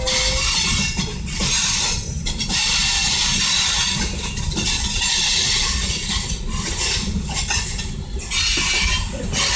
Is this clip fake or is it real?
real